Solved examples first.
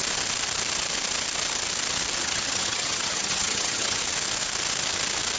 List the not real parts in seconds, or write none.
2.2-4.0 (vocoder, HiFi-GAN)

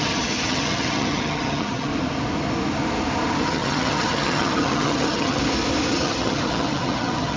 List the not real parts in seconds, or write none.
0.0-1.9 (vocoder, HiFi-GAN); 3.4-5.4; 5.9-7.4

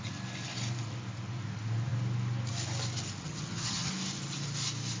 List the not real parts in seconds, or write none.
3.2-3.9 (vocoder, HiFi-GAN)

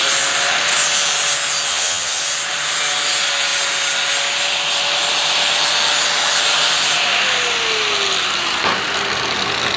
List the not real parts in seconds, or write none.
1.7-2.2 (vocoder, HiFi-GAN)

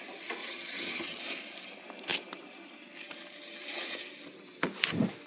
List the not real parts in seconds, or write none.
0.4-1.2 (vocoder, HiFi-GAN)

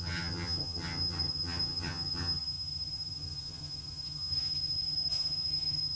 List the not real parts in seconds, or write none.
0.0-6.0 (vocoder, HiFi-GAN)

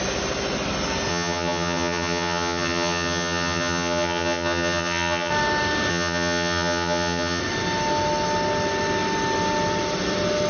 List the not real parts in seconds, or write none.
1.1-5.3 (vocoder, HiFi-GAN); 5.9-7.4